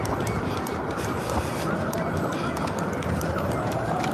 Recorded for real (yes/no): yes